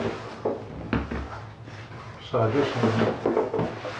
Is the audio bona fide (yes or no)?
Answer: yes